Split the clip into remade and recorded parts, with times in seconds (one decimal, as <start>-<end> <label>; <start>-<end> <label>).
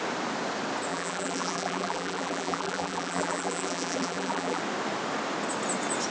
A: 0.0-0.9 recorded; 0.9-4.6 remade; 4.6-6.1 recorded